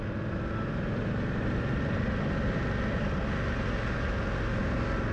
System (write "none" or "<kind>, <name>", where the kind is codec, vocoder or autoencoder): none